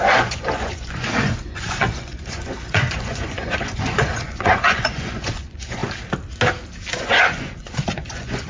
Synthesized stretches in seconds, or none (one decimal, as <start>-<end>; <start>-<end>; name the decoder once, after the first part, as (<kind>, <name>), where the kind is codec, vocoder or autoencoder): 0.0-5.8 (vocoder, Vocos); 7.0-8.5